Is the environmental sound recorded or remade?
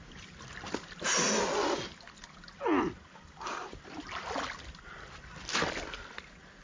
recorded